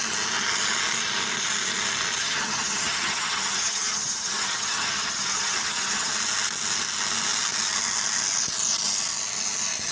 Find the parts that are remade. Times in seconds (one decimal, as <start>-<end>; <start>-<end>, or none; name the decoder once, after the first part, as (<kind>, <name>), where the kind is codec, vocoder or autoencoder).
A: 2.2-6.1 (vocoder, HiFi-GAN)